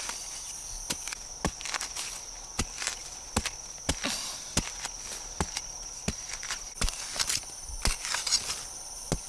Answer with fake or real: real